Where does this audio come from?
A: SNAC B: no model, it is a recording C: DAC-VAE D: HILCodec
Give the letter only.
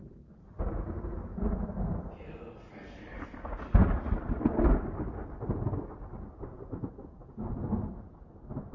B